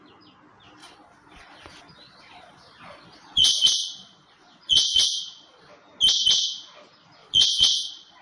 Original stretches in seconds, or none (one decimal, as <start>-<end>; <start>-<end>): 0.0-0.8; 5.7-7.2